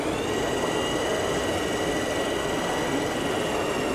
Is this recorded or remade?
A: recorded